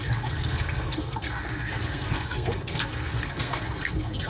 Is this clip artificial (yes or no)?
yes